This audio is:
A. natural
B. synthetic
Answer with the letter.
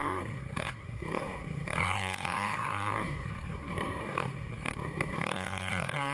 B